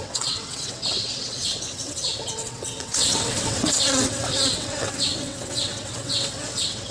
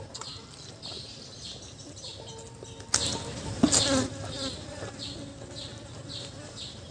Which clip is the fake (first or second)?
first